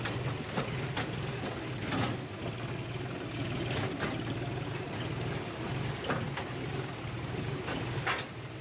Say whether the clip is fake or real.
real